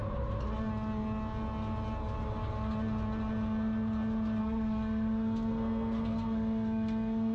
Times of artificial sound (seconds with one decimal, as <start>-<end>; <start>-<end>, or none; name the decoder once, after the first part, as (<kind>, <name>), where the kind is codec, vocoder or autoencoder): 4.4-7.3 (codec, SNAC)